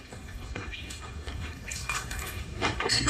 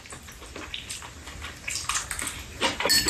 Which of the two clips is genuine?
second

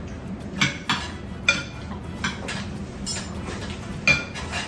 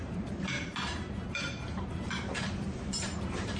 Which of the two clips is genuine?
first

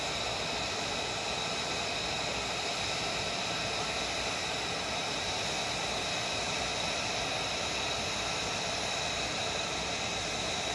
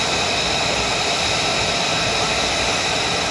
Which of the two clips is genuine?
first